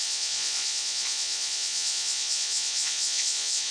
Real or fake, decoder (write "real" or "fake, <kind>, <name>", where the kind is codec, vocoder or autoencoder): fake, vocoder, Vocos